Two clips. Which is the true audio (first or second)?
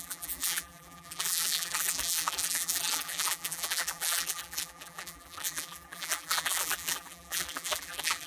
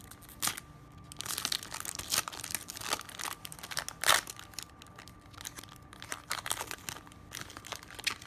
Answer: second